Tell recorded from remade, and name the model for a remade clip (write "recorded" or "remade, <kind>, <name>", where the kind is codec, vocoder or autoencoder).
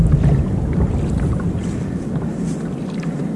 recorded